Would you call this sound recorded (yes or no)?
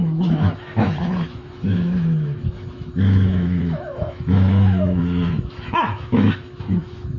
no